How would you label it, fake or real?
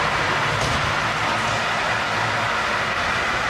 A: real